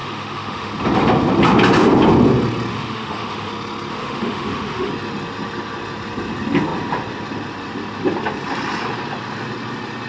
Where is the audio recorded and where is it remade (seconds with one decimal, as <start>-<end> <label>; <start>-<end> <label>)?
0.0-0.7 remade; 0.7-2.7 recorded; 2.7-3.5 remade; 3.5-3.9 recorded; 3.9-4.9 remade; 4.9-10.1 recorded